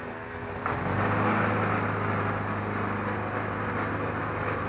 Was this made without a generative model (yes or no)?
yes